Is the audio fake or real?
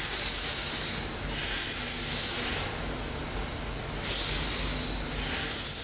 real